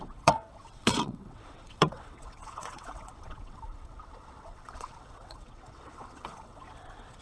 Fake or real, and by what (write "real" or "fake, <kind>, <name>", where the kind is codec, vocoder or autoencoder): fake, vocoder, WaveNeXt